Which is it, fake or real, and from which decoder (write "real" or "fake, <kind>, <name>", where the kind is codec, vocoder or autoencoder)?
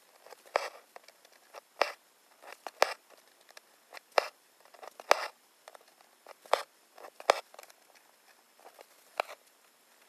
real